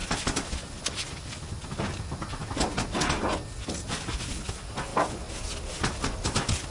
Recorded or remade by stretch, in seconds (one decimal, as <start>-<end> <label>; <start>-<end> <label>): 0.0-6.7 recorded